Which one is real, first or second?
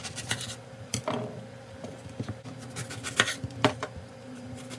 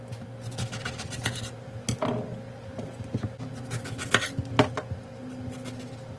second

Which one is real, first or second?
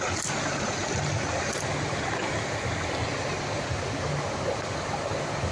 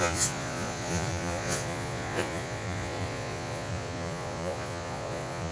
first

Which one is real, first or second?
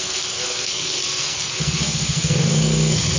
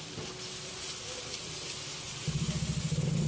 second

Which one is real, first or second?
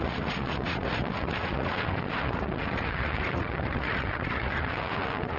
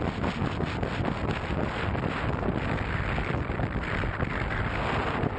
second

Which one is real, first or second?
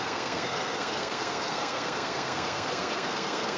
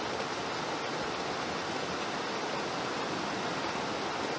second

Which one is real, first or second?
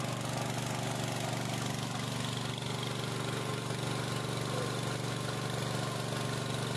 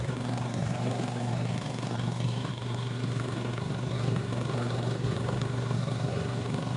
first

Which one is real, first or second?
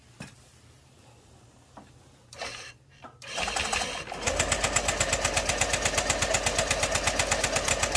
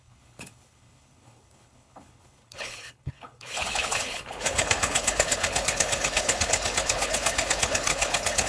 first